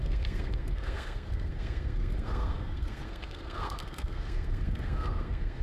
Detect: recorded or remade remade